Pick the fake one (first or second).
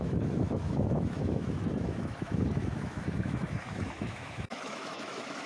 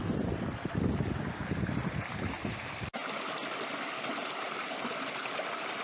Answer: first